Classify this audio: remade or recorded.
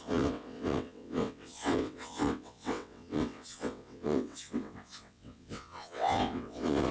remade